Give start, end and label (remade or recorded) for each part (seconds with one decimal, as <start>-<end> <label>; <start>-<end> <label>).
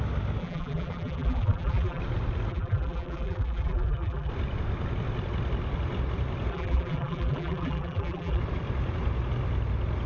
0.0-0.4 recorded; 0.4-2.0 remade; 2.0-2.5 recorded; 2.5-4.3 remade; 4.3-6.5 recorded; 6.5-8.4 remade; 8.4-10.1 recorded